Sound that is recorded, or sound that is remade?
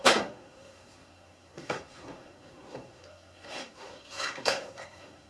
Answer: remade